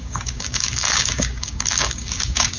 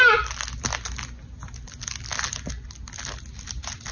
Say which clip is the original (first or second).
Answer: second